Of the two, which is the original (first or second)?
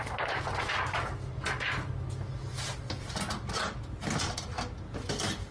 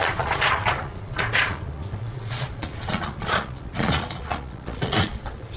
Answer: first